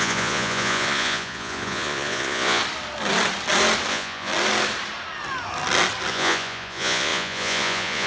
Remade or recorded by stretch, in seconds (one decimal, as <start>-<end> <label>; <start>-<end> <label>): 0.0-2.6 remade; 2.6-3.9 recorded; 3.9-4.3 remade; 4.3-6.1 recorded; 6.1-8.1 remade